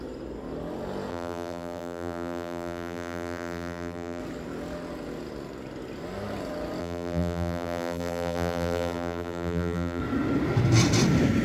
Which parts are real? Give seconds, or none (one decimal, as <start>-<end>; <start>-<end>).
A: 0.0-1.1; 4.2-6.8; 10.0-11.4